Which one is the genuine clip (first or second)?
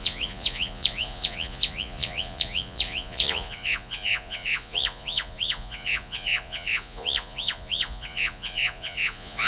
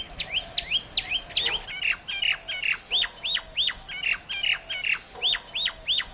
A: second